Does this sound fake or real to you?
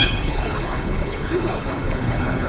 fake